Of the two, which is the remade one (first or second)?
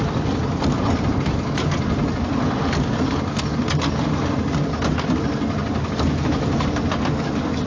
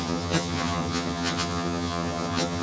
second